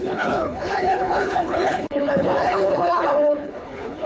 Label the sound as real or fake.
fake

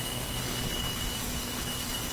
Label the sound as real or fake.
fake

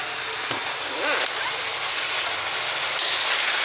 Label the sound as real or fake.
real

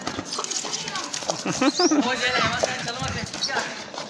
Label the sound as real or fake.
real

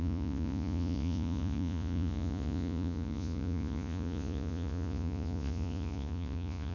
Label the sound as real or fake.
fake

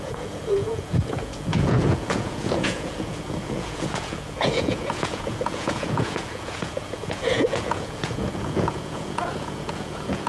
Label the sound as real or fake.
fake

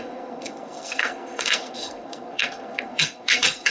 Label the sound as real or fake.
fake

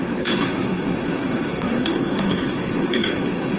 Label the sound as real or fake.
fake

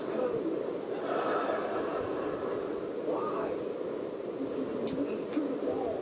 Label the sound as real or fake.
real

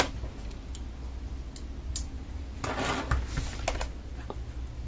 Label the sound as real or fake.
real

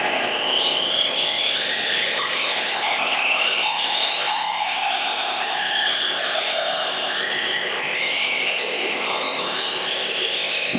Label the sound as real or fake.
fake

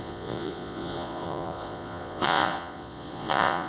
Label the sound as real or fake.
fake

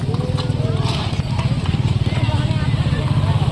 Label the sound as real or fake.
real